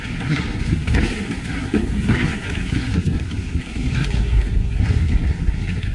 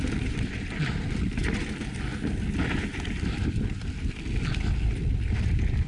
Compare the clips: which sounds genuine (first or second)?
second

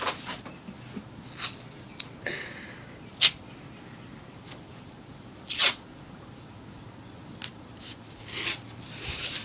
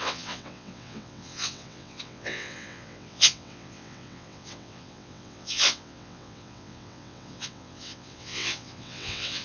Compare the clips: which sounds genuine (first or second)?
first